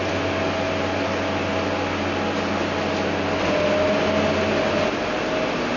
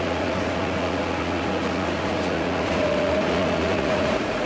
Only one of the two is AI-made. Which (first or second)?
second